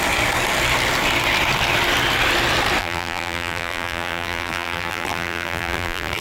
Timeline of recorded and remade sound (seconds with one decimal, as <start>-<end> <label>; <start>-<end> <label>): 0.0-2.8 recorded; 2.8-6.2 remade